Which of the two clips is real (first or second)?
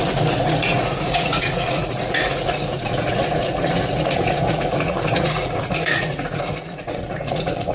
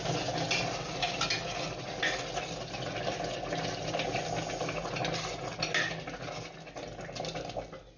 second